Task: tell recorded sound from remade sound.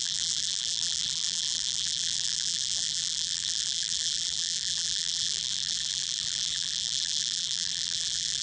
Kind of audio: remade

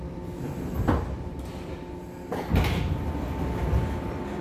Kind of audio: recorded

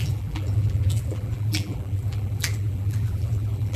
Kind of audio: remade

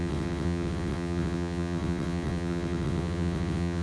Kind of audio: remade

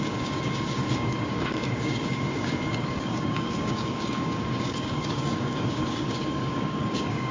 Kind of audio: remade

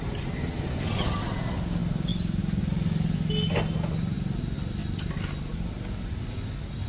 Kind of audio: recorded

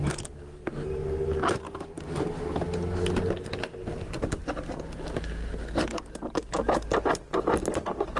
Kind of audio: recorded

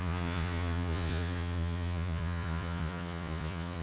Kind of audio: remade